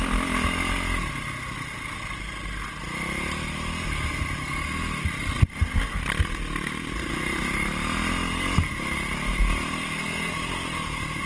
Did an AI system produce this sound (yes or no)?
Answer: no